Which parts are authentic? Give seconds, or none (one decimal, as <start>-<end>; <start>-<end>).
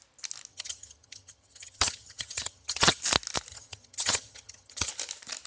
0.0-0.5; 3.0-3.5; 4.9-5.5